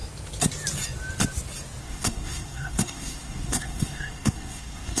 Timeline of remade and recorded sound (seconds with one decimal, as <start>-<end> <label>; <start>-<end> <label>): 0.0-1.8 recorded; 1.8-5.0 remade